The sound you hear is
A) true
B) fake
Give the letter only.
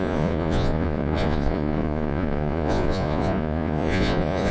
B